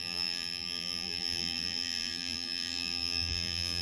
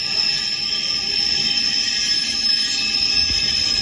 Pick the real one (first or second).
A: second